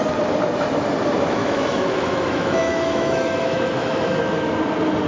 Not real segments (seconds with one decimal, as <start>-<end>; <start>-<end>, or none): 1.4-4.5